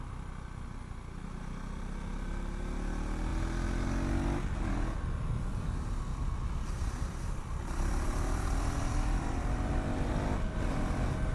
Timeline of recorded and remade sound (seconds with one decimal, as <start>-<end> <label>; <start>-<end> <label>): 0.0-6.1 recorded; 6.1-10.1 remade; 10.1-11.3 recorded